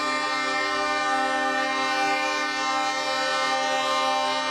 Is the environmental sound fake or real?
real